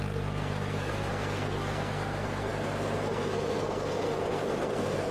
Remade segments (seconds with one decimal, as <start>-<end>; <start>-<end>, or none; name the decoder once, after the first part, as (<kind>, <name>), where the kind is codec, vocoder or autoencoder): 0.0-5.1 (codec, SNAC)